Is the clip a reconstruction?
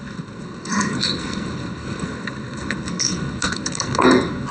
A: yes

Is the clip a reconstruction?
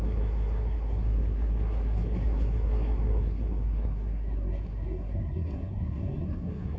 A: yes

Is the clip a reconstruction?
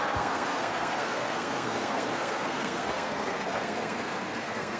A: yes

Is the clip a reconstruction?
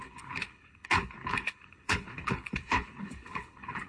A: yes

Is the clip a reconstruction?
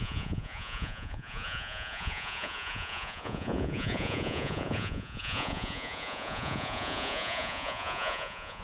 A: yes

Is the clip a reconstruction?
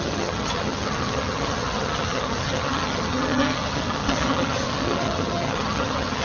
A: yes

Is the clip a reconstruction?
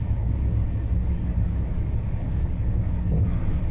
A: yes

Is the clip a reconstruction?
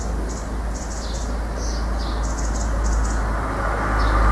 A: no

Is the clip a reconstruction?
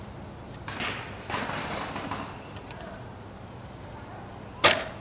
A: no